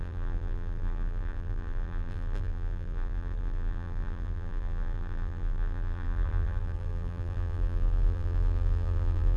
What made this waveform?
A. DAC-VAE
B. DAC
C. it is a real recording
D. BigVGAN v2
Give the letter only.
D